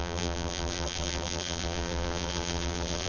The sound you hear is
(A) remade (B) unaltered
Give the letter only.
A